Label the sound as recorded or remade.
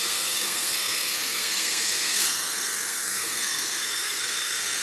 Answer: remade